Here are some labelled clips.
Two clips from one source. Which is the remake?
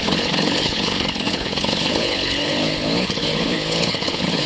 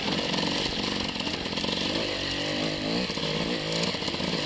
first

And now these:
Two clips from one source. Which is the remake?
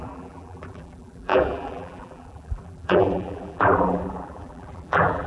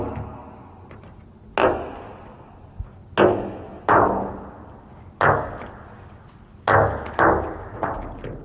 first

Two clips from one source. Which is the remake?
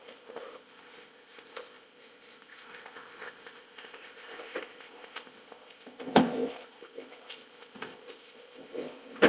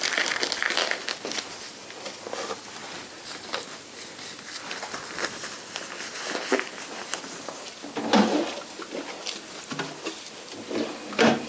first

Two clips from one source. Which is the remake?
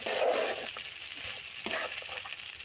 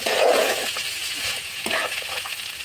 second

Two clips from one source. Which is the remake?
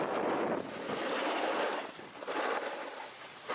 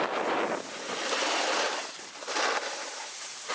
first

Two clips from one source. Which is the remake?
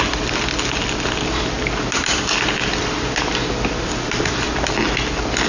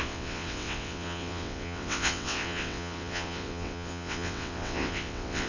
second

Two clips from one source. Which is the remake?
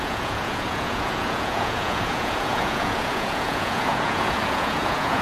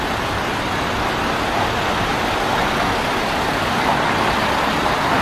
first